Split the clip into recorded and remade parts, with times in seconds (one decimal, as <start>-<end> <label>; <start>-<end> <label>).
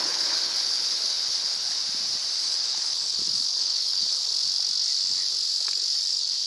0.0-1.8 remade; 1.8-2.4 recorded; 2.4-4.3 remade; 4.3-6.1 recorded; 6.1-6.5 remade